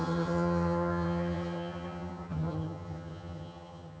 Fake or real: fake